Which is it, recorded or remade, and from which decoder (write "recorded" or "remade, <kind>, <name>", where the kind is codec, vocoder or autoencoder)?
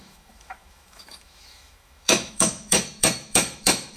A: remade, autoencoder, DAC-VAE